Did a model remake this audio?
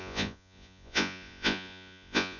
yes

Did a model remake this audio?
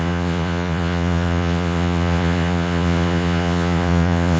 yes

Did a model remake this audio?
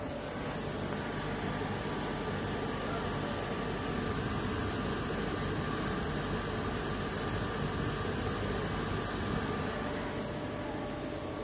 no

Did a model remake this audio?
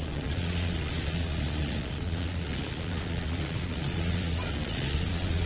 yes